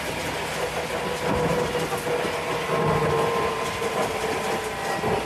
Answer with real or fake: real